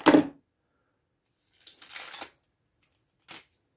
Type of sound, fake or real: real